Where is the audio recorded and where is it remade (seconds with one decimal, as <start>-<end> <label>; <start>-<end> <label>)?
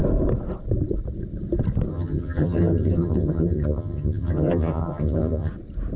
0.0-1.9 recorded; 1.9-5.5 remade; 5.5-6.0 recorded